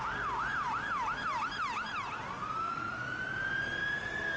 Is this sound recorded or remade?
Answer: recorded